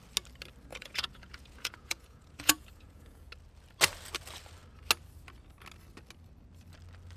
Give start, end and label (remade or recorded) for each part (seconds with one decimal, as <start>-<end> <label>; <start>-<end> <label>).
0.0-0.7 recorded; 0.7-3.3 remade; 3.3-7.2 recorded